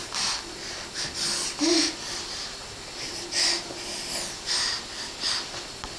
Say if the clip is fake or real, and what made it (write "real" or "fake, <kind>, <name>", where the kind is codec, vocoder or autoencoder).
real